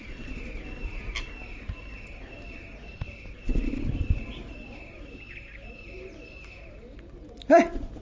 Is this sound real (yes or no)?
yes